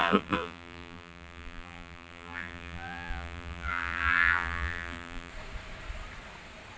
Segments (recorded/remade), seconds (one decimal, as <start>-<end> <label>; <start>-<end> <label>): 0.0-5.3 remade; 5.3-6.8 recorded